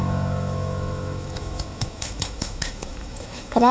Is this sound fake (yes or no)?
yes